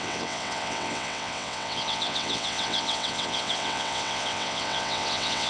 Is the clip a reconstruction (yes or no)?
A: yes